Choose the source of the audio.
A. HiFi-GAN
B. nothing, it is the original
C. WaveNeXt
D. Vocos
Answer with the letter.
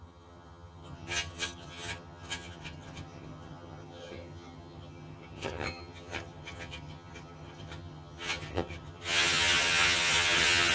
A